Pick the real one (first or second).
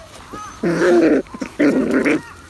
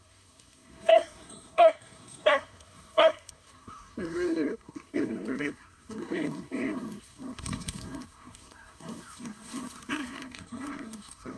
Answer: first